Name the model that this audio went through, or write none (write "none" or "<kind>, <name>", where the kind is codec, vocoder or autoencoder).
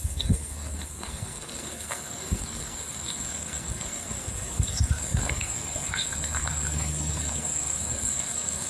codec, SNAC